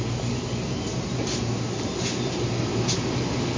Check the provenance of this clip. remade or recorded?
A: recorded